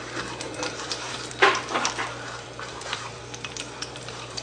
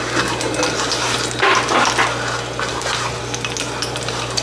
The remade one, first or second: first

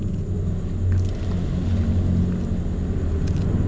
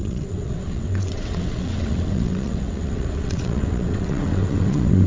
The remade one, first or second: second